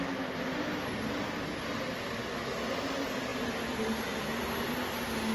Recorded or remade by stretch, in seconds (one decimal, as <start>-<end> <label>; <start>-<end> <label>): 0.0-5.3 recorded